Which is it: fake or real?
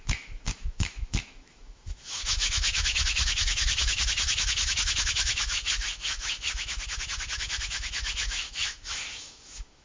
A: fake